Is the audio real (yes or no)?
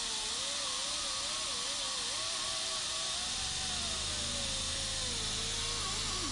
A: yes